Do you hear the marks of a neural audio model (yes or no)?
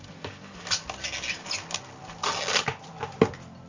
no